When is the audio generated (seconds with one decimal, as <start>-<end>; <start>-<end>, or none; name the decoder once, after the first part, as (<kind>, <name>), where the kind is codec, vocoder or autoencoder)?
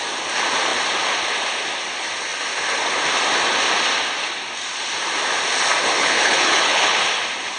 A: 6.0-7.0 (codec, HILCodec)